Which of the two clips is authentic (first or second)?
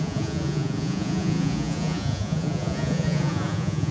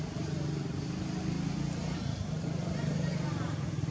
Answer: second